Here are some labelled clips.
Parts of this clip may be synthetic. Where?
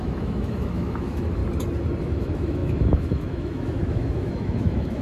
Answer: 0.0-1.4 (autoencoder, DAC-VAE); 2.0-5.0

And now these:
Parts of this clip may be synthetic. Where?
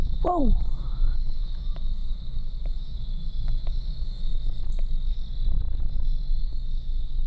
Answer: 0.0-4.3 (autoencoder, DAC-VAE); 6.4-7.3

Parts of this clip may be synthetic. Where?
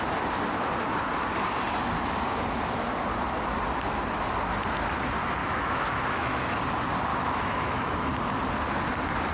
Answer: 5.4-6.5 (autoencoder, DAC-VAE); 7.1-8.1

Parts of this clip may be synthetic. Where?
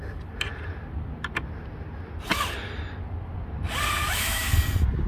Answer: 4.0-4.5 (autoencoder, DAC-VAE)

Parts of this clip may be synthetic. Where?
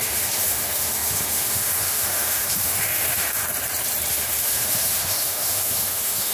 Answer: 0.0-3.4 (autoencoder, DAC-VAE); 4.1-6.3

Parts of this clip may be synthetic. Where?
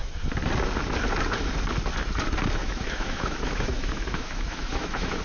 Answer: 2.6-5.2 (autoencoder, DAC-VAE)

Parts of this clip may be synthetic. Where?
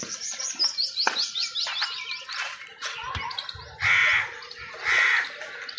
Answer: none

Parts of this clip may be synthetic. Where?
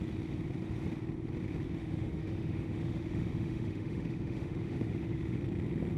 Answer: 1.8-5.4 (autoencoder, DAC-VAE)